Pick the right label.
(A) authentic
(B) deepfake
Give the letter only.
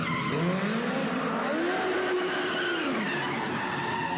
A